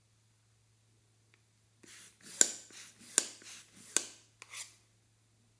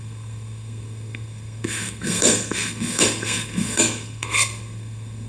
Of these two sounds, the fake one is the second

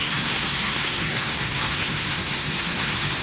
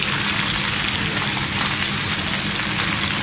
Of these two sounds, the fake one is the first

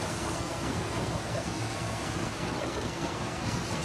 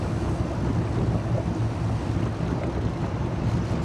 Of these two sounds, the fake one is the first